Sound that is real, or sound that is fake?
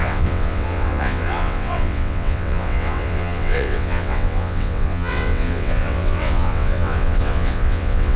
fake